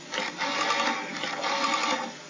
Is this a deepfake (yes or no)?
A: no